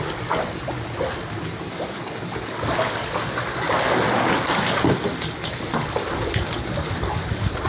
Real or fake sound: real